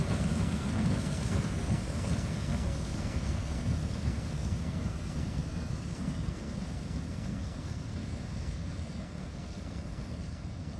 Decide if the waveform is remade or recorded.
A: remade